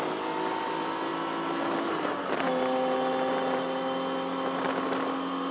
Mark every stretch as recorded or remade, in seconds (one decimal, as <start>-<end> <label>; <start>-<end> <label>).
0.0-5.5 recorded